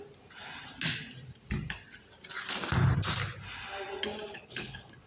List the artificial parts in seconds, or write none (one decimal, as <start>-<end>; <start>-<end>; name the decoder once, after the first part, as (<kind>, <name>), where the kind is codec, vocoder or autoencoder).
4.3-5.1 (codec, HILCodec)